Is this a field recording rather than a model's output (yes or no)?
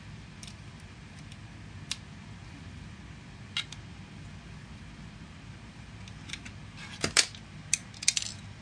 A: yes